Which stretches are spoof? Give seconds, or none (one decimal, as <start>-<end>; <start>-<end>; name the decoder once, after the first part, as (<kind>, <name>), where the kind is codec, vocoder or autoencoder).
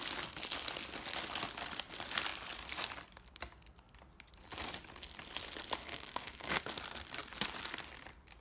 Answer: 5.8-6.6 (codec, SNAC)